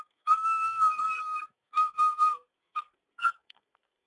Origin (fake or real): fake